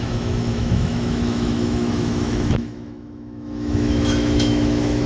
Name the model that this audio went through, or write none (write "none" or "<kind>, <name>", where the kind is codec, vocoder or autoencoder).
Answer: autoencoder, DAC-VAE